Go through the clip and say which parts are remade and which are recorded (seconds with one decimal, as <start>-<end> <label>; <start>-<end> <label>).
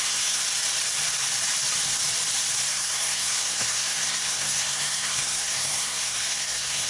0.0-0.4 remade; 0.4-2.7 recorded; 2.7-6.9 remade